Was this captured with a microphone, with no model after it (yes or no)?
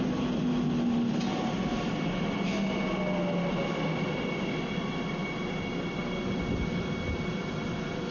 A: yes